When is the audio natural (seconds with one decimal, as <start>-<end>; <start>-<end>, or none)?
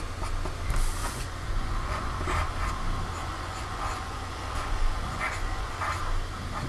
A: 0.0-1.0; 2.2-3.2; 5.7-6.7